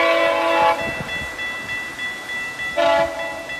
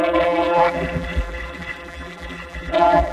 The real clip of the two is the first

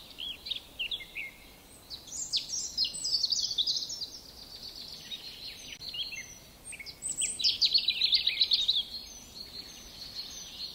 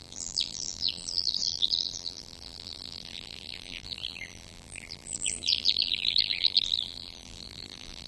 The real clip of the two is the first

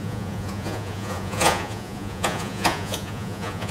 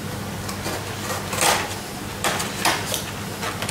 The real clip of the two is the second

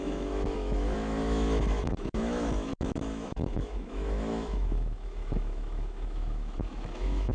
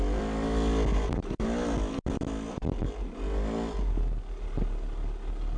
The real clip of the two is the second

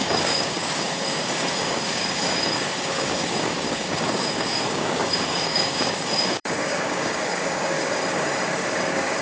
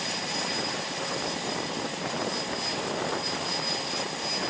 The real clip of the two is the second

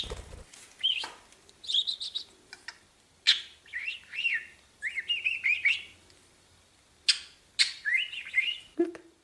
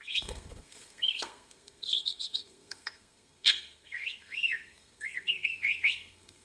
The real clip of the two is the first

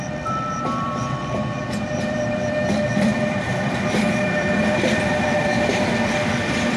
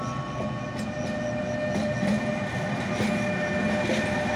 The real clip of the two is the second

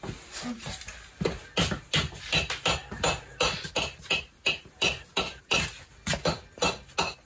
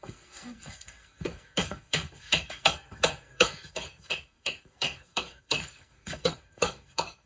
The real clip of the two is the first